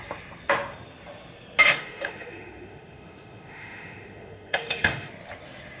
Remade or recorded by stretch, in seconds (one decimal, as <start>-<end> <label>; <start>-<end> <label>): 0.0-1.6 recorded; 1.6-5.1 remade; 5.1-5.8 recorded